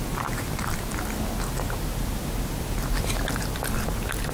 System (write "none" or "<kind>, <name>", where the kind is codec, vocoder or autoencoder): none